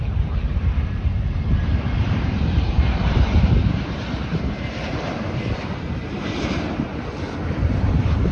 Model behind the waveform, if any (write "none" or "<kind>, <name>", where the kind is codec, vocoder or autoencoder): vocoder, BigVGAN v2